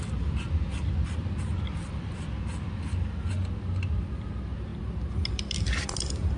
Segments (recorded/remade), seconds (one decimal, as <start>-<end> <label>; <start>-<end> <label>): 0.0-0.7 recorded; 0.7-2.2 remade; 2.2-4.7 recorded; 4.7-6.4 remade